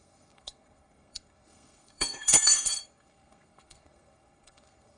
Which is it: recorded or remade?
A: remade